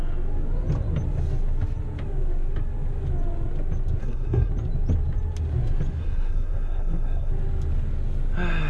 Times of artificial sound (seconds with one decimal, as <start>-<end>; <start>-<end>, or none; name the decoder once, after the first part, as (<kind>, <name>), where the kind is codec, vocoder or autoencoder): 4.0-4.5 (codec, SNAC); 6.0-7.3